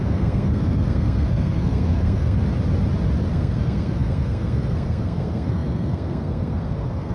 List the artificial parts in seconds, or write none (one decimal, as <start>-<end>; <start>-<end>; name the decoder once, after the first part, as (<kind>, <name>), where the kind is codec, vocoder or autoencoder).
0.0-2.4 (codec, SNAC); 3.3-7.1